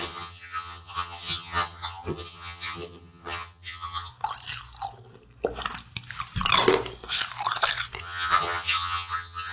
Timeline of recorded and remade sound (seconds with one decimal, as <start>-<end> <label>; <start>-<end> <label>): 0.0-4.1 remade; 4.1-8.0 recorded; 8.0-9.5 remade